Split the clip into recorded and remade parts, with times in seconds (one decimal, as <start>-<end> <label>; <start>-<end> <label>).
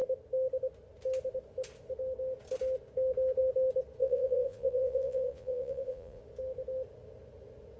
0.0-4.0 recorded; 4.0-6.2 remade; 6.2-7.8 recorded